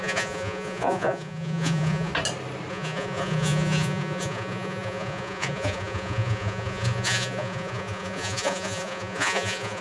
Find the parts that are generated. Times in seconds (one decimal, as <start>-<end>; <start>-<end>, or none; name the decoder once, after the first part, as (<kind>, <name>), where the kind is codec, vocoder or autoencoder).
0.0-2.1 (vocoder, Vocos); 2.7-9.8